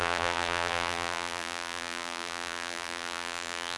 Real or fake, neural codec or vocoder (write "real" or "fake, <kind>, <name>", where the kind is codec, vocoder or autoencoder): fake, vocoder, BigVGAN v2